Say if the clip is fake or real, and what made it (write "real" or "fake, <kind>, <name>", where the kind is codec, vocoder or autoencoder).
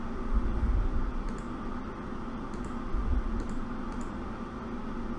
real